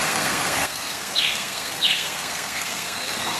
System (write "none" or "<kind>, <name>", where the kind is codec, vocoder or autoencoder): codec, SNAC